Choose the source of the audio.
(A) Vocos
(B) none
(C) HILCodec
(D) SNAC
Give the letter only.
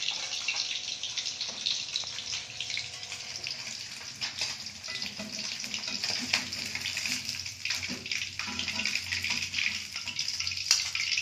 B